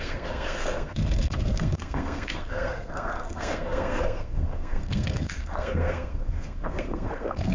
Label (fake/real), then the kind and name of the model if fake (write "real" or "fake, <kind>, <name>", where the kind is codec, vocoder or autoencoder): fake, codec, SNAC